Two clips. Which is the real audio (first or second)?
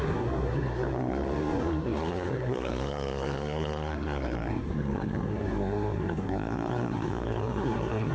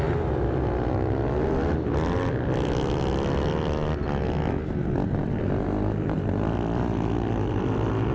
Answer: second